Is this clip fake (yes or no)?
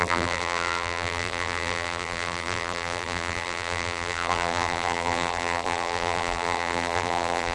yes